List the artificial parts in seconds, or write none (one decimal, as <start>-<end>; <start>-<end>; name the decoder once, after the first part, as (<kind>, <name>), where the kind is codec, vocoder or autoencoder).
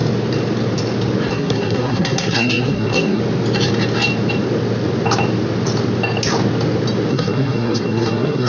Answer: 1.3-3.2 (codec, SNAC); 7.1-8.5